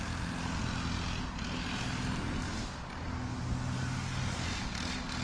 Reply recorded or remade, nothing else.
recorded